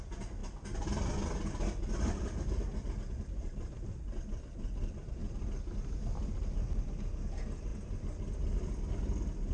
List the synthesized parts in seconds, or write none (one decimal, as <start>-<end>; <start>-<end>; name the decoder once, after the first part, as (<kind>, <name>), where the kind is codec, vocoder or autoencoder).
none